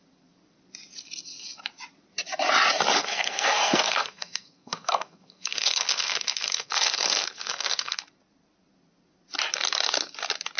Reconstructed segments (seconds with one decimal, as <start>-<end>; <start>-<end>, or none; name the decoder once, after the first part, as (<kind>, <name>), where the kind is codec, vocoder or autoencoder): 3.0-8.0 (codec, SNAC)